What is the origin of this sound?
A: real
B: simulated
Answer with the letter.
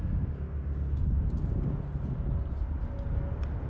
A